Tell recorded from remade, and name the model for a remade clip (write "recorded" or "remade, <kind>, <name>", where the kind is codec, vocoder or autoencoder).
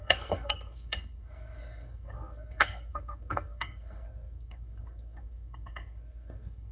remade, codec, SNAC